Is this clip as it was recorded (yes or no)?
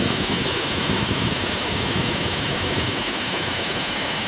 no